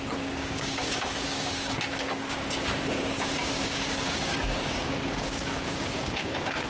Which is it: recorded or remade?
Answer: remade